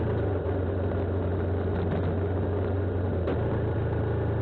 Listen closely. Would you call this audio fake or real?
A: real